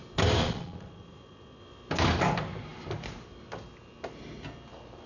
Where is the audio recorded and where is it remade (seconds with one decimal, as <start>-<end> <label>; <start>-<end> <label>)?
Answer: 0.0-0.4 recorded; 0.4-1.6 remade; 1.6-5.1 recorded